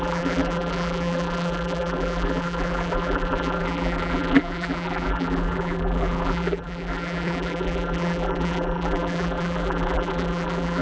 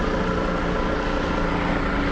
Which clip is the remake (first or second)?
first